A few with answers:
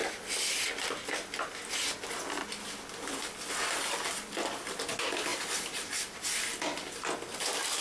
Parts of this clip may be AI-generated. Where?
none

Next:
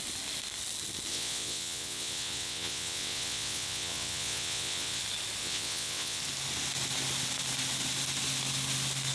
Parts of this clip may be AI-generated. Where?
1.1-5.0 (vocoder, WaveNeXt); 5.4-6.2